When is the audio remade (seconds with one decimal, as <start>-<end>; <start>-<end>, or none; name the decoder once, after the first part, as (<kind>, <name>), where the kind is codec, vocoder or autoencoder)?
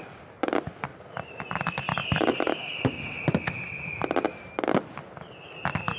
none